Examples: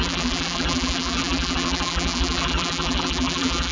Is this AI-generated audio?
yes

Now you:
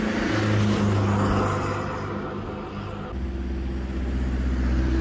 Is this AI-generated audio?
no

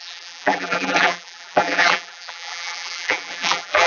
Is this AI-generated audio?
yes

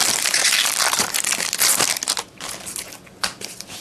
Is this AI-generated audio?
no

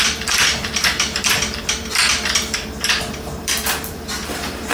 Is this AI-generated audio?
yes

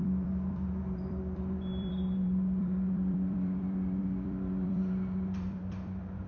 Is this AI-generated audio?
yes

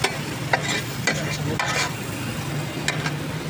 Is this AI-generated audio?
no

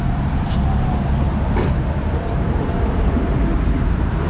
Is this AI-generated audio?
yes